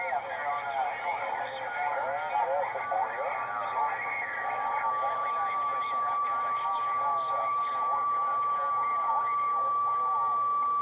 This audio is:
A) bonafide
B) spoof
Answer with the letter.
A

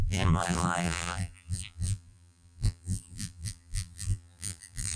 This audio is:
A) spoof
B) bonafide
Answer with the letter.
A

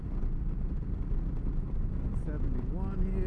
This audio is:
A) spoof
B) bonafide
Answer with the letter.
B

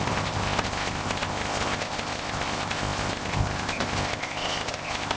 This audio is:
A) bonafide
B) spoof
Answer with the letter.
B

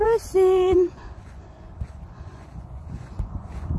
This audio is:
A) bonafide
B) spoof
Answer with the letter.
B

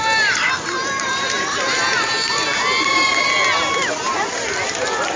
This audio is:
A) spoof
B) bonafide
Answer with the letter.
B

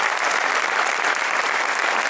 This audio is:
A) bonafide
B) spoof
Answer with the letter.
A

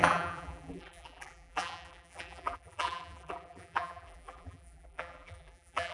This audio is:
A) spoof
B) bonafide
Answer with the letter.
A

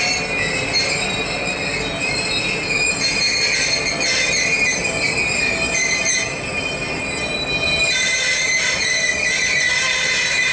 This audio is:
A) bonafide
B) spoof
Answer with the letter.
A